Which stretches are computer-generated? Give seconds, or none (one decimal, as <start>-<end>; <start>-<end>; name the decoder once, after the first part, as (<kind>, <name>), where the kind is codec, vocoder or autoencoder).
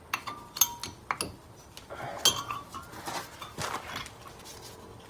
none